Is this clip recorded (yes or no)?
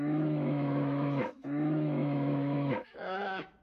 no